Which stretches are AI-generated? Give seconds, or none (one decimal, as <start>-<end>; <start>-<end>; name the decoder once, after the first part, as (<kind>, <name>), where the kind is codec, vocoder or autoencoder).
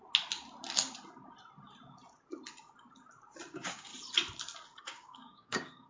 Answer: 3.5-3.9 (codec, DAC); 4.8-5.9